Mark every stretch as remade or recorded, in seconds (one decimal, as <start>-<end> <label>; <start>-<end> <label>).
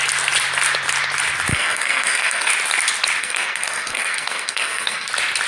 0.0-1.5 recorded; 1.5-2.5 remade; 2.5-3.2 recorded; 3.2-5.1 remade; 5.1-5.5 recorded